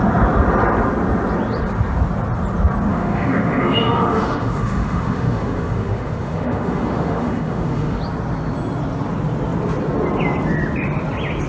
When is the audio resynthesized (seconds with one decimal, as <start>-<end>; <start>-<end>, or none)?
2.9-8.0